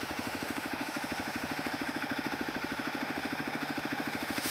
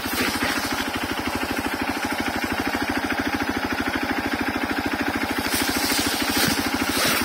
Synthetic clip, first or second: first